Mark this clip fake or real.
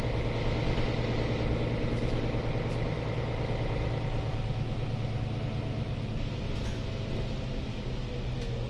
real